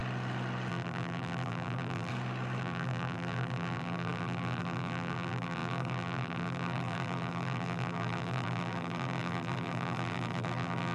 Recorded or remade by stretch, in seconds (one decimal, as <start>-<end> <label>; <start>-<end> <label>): 0.0-0.7 recorded; 0.7-2.1 remade; 2.1-2.6 recorded; 2.6-10.9 remade